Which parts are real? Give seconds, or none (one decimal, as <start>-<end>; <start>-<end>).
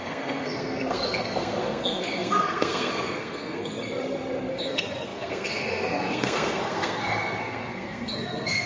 3.7-4.5